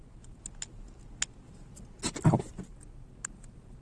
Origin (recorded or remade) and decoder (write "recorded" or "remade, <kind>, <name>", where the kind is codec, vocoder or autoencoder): recorded